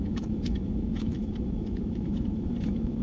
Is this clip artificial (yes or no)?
yes